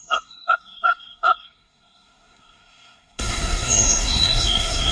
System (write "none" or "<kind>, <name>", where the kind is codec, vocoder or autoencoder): codec, SNAC